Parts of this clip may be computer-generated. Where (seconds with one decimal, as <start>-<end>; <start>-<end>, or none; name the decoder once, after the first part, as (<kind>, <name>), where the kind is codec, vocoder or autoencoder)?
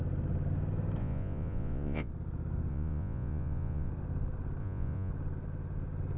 1.0-2.1 (vocoder, Vocos); 2.7-3.9; 4.6-5.1